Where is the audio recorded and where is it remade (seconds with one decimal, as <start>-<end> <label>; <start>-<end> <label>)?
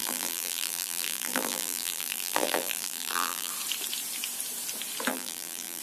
0.0-3.5 remade; 3.5-5.1 recorded; 5.1-5.8 remade